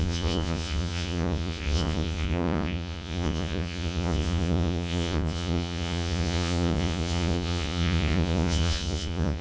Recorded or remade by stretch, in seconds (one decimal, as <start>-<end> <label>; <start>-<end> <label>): 0.0-9.4 remade